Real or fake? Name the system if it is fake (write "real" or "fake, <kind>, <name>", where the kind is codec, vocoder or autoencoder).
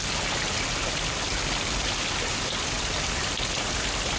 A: real